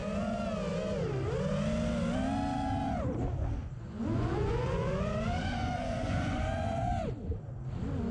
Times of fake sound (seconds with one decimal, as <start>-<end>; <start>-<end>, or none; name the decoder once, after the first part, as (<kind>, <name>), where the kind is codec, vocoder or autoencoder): 3.6-6.9 (vocoder, Vocos)